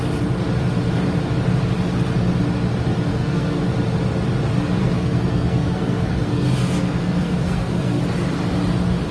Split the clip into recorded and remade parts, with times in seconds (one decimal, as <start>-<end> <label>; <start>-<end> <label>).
0.0-3.1 recorded; 3.1-3.6 remade; 3.6-4.8 recorded; 4.8-8.0 remade; 8.0-9.1 recorded